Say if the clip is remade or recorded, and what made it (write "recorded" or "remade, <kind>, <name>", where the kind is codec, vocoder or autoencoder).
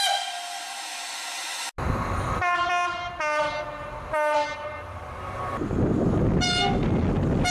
recorded